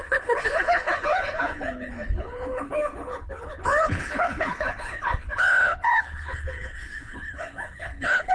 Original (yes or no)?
no